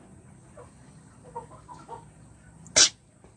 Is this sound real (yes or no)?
yes